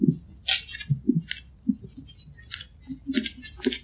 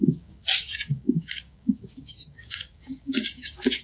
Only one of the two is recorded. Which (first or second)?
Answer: first